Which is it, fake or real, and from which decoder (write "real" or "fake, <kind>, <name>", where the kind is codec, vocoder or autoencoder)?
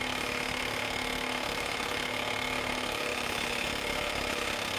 fake, autoencoder, DAC-VAE